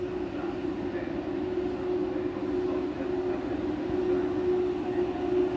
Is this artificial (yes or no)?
no